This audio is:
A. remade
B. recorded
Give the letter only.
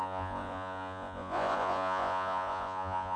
A